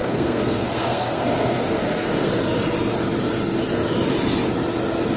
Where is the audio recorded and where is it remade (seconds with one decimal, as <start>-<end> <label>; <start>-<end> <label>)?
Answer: 0.0-2.3 remade; 2.3-5.2 recorded